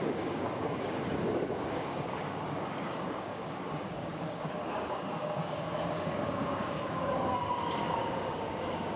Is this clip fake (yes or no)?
yes